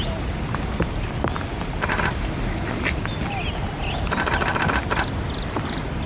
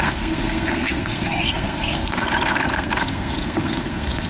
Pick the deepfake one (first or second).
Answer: second